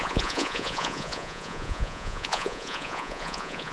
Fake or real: fake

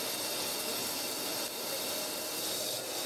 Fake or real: real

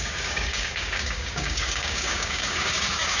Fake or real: fake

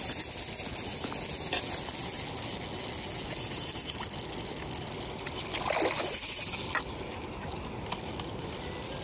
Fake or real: real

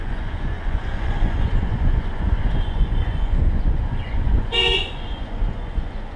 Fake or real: fake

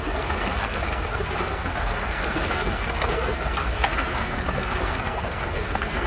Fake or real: fake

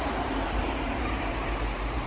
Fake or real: fake